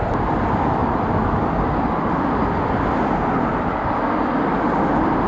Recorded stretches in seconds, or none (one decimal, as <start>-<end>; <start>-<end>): 0.0-5.3